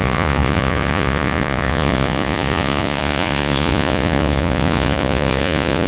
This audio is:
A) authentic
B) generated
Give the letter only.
B